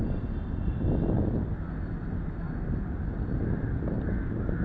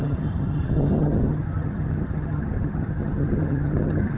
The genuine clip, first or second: first